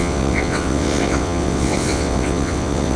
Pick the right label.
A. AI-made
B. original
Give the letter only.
A